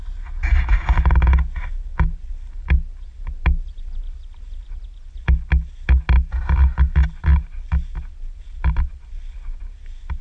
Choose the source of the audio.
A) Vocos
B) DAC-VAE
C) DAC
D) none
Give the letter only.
D